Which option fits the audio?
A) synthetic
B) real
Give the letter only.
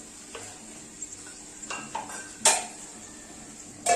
B